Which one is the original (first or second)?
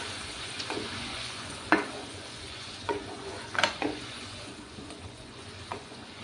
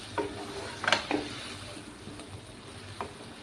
second